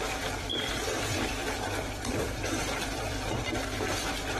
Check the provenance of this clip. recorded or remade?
remade